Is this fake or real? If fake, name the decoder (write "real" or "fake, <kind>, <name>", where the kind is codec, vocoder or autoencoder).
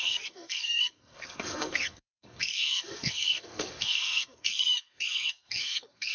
fake, codec, SNAC